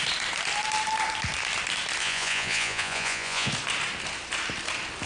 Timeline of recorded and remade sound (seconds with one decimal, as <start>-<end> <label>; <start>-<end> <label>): 0.0-2.0 recorded; 2.0-3.5 remade; 3.5-5.1 recorded